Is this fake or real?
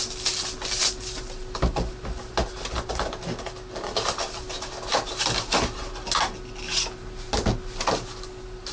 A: real